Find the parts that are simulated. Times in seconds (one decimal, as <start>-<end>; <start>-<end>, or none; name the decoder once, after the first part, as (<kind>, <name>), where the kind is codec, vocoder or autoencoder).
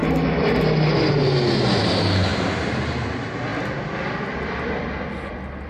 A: none